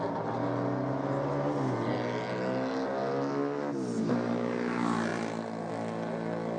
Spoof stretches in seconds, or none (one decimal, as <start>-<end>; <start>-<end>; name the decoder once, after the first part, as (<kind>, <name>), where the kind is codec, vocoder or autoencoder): none

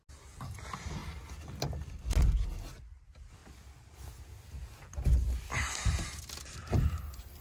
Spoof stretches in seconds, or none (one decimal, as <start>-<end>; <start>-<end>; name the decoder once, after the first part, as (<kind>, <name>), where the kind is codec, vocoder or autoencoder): none

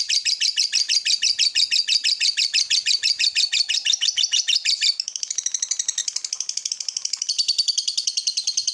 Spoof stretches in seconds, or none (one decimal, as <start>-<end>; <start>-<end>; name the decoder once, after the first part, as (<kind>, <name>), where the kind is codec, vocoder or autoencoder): 0.0-6.0 (vocoder, BigVGAN v2); 6.7-8.7

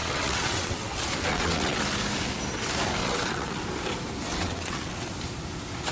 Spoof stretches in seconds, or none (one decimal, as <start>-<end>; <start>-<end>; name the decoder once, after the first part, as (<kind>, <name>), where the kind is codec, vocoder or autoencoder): 0.0-0.9 (vocoder, WaveNeXt); 1.3-1.8; 3.0-3.6; 4.3-5.1

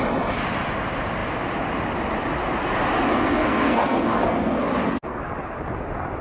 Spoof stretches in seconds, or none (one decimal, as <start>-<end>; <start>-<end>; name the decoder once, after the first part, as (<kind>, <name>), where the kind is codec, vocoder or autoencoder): 3.1-5.2 (codec, SNAC)

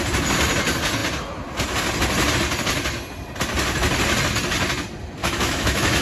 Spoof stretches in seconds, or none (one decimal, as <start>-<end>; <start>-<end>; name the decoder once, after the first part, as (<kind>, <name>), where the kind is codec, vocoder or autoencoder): 5.2-6.0 (autoencoder, DAC-VAE)

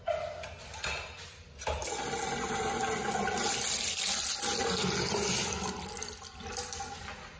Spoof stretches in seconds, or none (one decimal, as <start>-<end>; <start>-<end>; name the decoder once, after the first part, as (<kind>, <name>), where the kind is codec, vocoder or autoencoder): none

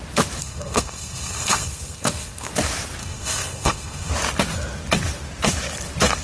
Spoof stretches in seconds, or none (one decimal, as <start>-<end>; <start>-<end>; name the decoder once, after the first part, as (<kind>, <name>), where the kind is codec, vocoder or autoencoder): 0.4-2.5 (codec, SNAC); 3.0-4.1